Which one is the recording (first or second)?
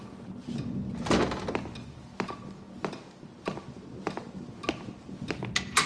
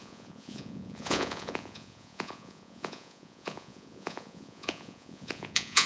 first